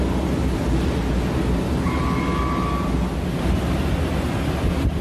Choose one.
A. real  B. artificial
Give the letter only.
A